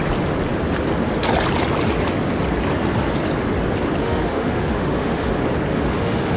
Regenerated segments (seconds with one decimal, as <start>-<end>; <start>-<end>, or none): 4.0-5.3; 5.7-6.4